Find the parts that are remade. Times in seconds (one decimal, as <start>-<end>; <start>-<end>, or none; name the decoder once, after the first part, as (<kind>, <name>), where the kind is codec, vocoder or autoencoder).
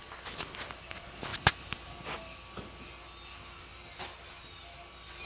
none